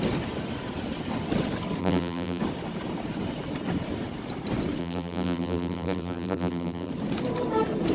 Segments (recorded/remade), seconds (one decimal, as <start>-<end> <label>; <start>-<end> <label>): 0.0-1.8 recorded; 1.8-2.4 remade; 2.4-4.8 recorded; 4.8-6.9 remade; 6.9-7.9 recorded